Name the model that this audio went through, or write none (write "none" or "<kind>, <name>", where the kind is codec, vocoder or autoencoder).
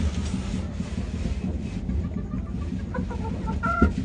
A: none